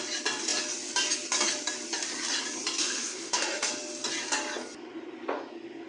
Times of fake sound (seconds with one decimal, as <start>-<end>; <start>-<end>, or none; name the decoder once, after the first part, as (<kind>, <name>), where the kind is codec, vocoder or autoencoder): 2.8-3.7 (autoencoder, DAC-VAE)